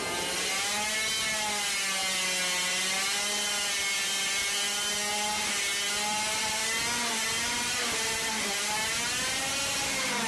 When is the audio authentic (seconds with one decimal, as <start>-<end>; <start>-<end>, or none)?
0.0-10.3